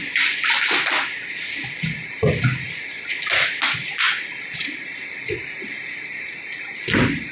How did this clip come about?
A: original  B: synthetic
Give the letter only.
A